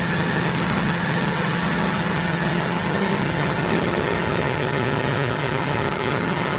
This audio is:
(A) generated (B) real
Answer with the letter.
A